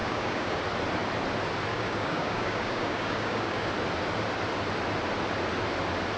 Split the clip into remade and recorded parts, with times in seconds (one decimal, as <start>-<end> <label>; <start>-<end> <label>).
0.0-0.6 remade; 0.6-1.7 recorded; 1.7-3.7 remade; 3.7-6.2 recorded